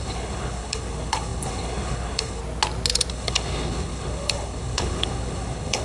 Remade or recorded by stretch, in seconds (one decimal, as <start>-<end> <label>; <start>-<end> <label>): 0.0-2.4 remade; 2.4-3.1 recorded; 3.1-5.8 remade